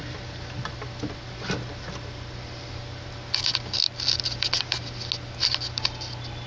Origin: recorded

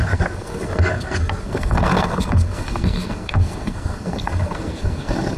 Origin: remade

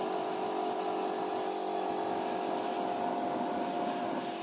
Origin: recorded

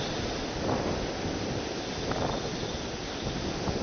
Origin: recorded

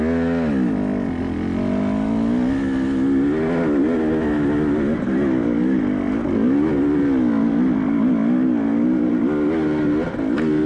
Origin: recorded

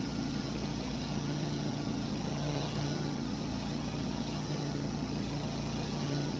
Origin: remade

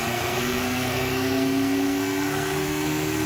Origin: remade